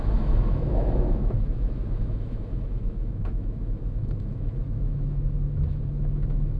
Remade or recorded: remade